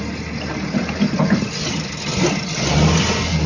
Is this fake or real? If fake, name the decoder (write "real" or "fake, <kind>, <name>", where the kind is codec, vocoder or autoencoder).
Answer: real